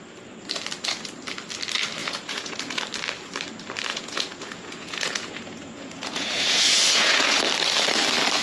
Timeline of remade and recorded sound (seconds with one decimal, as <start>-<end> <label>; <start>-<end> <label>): 0.0-2.0 recorded; 2.0-2.8 remade; 2.8-3.9 recorded; 3.9-7.4 remade; 7.4-8.4 recorded